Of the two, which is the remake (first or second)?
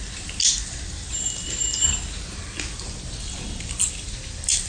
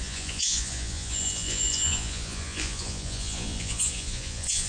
second